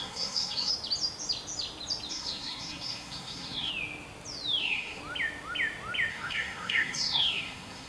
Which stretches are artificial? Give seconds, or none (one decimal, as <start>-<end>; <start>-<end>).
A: 0.0-0.7; 2.1-3.7; 4.6-5.0; 6.1-7.9